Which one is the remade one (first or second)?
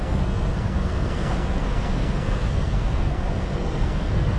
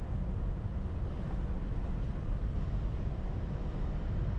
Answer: first